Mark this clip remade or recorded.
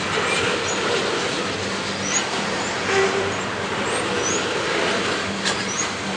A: recorded